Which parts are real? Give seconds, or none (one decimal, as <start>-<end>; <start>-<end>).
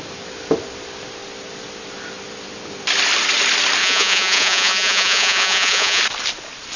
0.0-3.8; 6.0-6.8